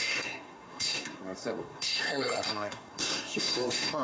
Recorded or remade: remade